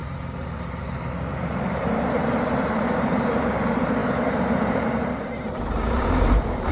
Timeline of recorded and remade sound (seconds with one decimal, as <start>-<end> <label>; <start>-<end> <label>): 0.0-4.0 remade; 4.0-4.6 recorded; 4.6-6.7 remade